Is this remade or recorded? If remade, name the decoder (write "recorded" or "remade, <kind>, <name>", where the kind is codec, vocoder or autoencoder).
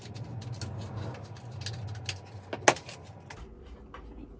recorded